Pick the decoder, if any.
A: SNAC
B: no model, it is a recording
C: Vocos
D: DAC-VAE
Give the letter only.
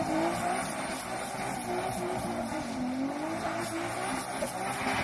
B